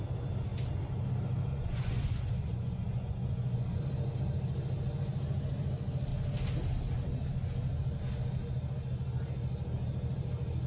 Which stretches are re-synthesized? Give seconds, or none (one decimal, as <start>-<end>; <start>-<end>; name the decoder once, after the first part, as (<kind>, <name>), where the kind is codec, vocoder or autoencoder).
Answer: 1.5-3.8 (vocoder, Vocos)